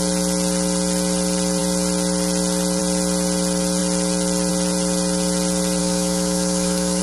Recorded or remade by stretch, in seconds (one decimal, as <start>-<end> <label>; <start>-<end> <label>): 0.0-5.8 recorded; 5.8-7.0 remade